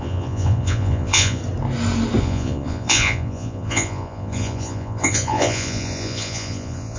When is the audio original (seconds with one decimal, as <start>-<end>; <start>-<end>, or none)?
1.4-2.2